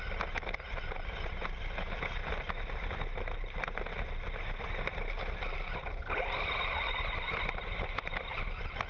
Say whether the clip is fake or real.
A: real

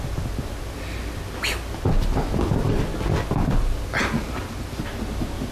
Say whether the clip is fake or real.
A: real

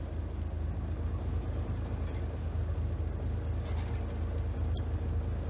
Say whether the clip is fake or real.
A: real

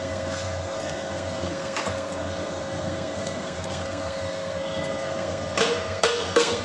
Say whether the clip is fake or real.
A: fake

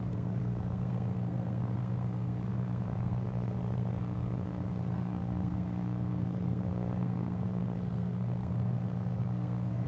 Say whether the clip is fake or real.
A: fake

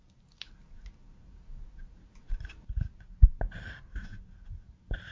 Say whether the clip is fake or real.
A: real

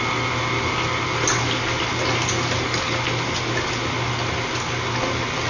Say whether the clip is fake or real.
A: real